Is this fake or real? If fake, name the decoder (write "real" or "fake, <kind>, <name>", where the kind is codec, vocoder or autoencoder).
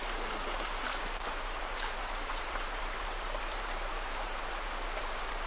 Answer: fake, vocoder, BigVGAN v2